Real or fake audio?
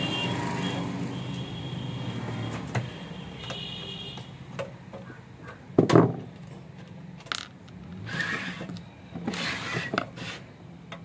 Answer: real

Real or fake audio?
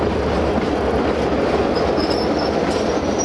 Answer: real